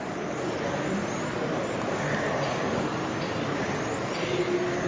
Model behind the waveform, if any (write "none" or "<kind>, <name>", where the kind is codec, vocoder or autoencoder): none